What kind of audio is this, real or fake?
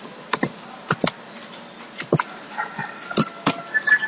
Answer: real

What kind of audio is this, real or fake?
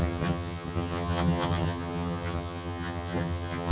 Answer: fake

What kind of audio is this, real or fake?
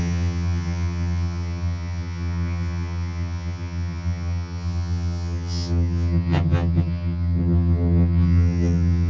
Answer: fake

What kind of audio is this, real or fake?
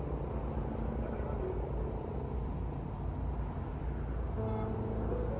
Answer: real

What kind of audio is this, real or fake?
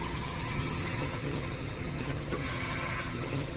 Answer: fake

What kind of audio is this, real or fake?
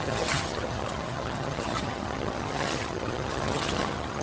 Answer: fake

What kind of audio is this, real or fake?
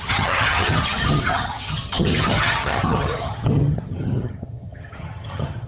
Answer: fake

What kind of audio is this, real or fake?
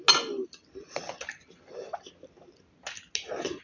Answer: real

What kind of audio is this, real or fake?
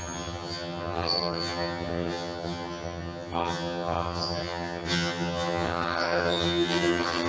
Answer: fake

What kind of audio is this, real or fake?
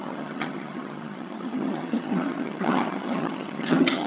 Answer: fake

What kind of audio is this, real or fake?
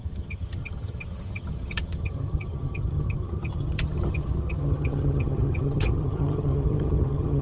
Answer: fake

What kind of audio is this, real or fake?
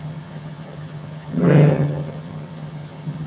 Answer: fake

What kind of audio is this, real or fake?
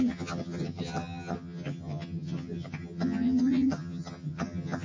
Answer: fake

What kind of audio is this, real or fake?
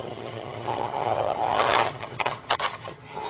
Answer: fake